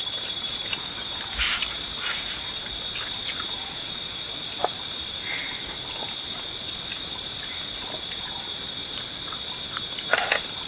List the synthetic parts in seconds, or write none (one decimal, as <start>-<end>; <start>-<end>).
none